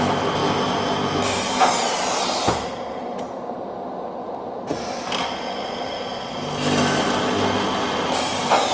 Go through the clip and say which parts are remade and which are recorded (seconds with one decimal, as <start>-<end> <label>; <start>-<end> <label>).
0.0-8.7 recorded